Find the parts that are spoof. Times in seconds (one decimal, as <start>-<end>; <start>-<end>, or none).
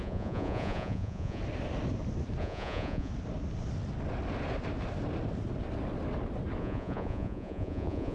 0.0-1.4; 2.4-3.1; 6.6-8.1